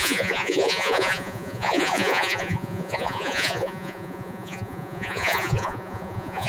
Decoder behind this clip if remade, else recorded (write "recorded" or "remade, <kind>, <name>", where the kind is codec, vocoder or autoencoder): remade, vocoder, Vocos